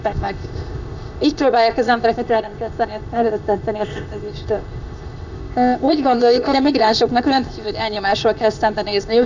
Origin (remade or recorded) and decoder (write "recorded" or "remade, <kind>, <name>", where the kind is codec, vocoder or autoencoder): remade, codec, ZipCodec